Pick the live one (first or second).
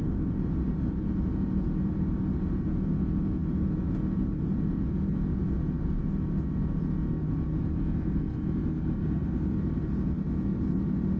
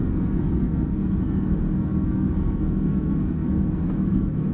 first